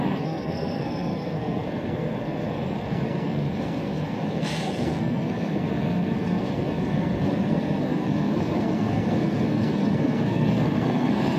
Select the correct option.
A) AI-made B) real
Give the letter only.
A